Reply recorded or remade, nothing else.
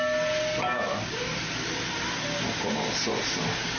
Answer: recorded